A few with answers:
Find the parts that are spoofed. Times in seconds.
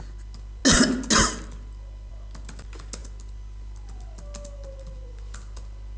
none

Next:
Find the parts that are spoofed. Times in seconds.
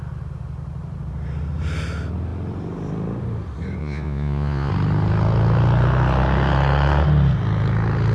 3.8-4.7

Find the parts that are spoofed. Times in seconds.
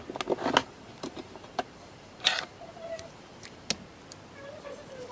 0.6-3.7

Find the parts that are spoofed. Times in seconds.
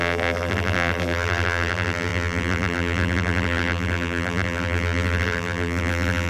0.0-6.3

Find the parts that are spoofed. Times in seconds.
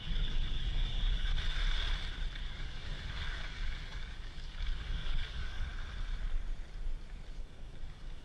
0.0-1.3; 2.4-5.7; 7.3-8.2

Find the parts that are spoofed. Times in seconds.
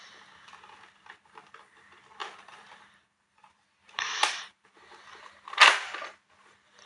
2.2-4.7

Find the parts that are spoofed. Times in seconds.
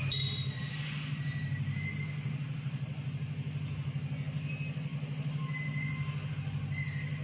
none